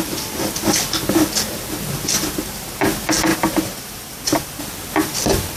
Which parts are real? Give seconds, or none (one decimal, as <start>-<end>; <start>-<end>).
0.0-3.3; 4.6-5.6

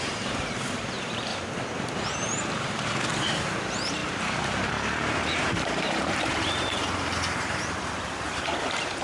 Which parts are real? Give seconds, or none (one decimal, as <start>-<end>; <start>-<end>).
1.3-1.8

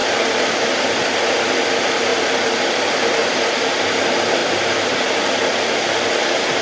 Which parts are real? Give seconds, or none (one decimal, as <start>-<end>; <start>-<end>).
1.2-6.6

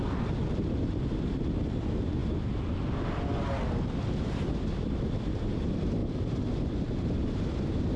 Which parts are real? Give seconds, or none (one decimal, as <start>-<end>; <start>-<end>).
0.0-6.0

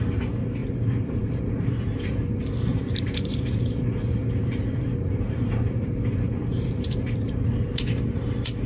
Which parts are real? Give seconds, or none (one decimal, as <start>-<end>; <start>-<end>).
0.0-0.6; 1.8-2.7; 7.8-8.7

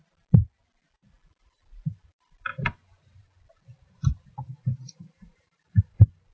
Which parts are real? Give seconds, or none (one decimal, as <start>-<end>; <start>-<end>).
0.0-2.5

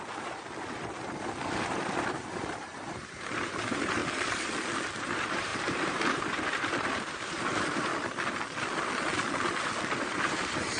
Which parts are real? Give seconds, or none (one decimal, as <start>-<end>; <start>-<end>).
4.0-5.0; 7.9-9.9